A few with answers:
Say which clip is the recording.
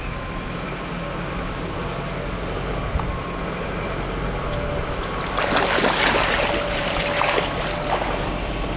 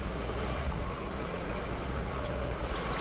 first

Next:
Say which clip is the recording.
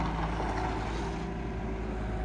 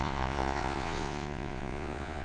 first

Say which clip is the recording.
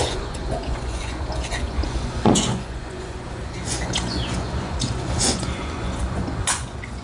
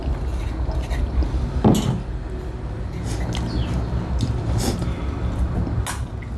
second